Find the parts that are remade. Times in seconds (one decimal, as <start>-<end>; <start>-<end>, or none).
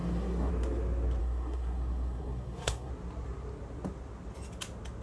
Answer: 0.0-0.5; 1.2-2.9